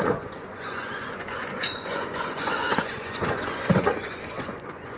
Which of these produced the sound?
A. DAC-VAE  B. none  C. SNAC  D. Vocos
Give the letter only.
D